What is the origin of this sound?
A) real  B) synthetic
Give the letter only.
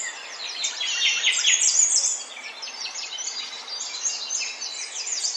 A